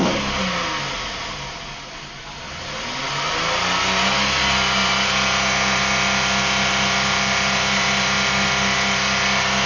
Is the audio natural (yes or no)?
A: yes